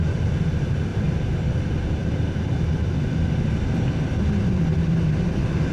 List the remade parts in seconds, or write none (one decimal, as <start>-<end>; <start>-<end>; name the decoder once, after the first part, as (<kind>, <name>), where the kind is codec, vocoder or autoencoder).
0.9-1.5 (vocoder, BigVGAN v2)